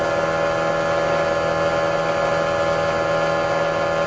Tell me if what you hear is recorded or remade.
recorded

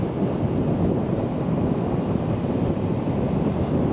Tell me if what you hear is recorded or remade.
recorded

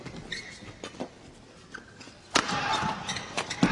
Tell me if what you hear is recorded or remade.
recorded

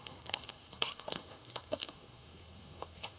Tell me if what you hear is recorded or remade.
remade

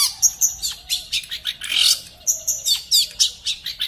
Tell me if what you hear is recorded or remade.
recorded